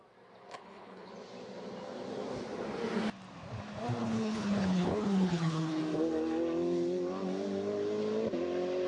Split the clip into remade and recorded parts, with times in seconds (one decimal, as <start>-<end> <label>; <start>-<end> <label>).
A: 0.0-0.5 recorded; 0.5-1.1 remade; 1.1-4.0 recorded; 4.0-5.8 remade; 5.8-8.9 recorded